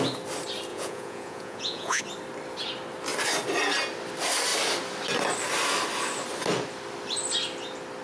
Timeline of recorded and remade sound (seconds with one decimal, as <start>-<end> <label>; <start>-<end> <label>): 0.0-0.7 recorded; 0.7-2.0 remade; 2.0-8.0 recorded